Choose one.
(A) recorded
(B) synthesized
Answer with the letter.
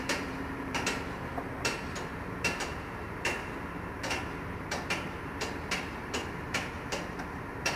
B